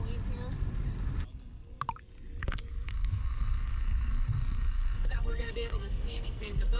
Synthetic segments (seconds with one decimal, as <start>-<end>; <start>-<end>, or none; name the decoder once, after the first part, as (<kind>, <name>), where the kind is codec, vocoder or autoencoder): 2.4-6.8 (codec, SNAC)